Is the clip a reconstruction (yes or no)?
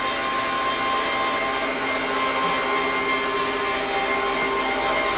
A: no